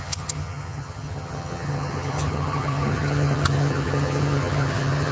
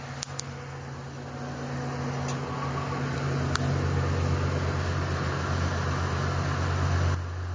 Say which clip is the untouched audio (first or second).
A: second